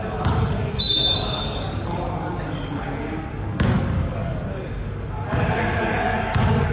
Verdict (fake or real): fake